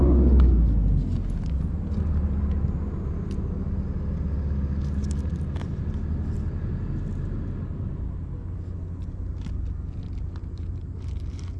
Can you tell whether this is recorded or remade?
recorded